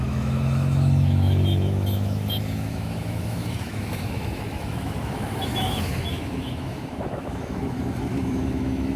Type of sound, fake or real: fake